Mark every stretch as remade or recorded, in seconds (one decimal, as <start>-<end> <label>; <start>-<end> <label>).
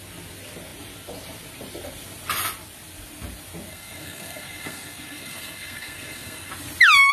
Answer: 0.0-3.7 recorded; 3.7-6.5 remade; 6.5-7.1 recorded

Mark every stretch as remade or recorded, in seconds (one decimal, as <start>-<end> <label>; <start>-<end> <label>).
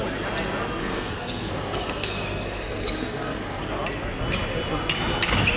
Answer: 0.0-0.8 recorded; 0.8-3.6 remade; 3.6-5.6 recorded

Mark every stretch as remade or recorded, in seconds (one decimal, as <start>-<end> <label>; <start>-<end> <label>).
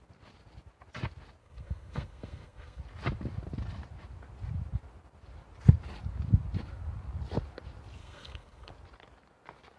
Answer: 0.0-1.4 recorded; 1.4-2.8 remade; 2.8-8.0 recorded; 8.0-8.7 remade; 8.7-9.8 recorded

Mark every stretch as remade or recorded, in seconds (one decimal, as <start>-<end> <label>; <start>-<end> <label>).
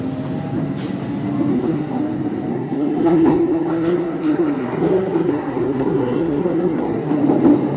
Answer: 0.0-1.5 recorded; 1.5-2.0 remade; 2.0-2.5 recorded; 2.5-7.2 remade; 7.2-7.8 recorded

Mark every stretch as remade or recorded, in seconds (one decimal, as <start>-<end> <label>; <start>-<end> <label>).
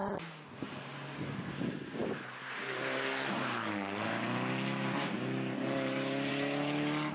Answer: 0.0-7.1 recorded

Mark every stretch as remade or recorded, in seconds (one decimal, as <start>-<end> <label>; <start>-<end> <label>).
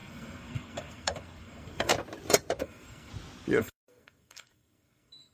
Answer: 0.0-1.9 remade; 1.9-2.6 recorded; 2.6-3.1 remade; 3.1-3.6 recorded; 3.6-5.3 remade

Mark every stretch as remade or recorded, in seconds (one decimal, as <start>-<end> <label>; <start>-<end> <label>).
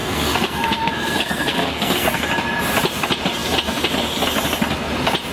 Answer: 0.0-2.3 remade; 2.3-5.3 recorded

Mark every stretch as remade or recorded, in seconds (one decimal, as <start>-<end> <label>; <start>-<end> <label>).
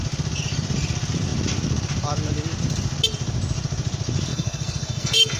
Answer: 0.0-4.3 recorded; 4.3-5.4 remade